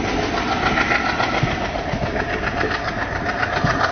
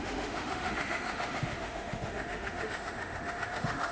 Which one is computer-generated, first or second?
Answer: second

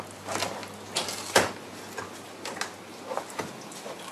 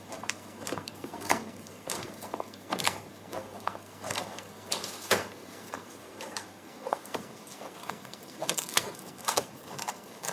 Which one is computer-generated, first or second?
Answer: second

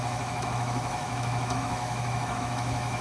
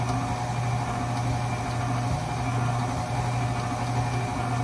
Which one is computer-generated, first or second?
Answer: first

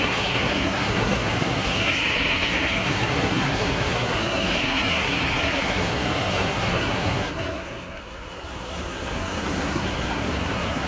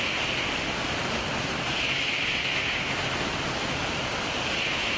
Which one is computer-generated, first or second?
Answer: first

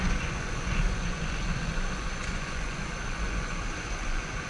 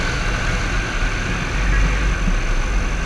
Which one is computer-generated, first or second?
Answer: first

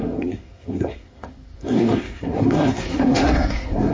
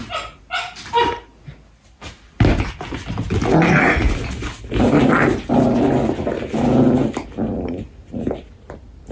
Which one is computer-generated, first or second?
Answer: first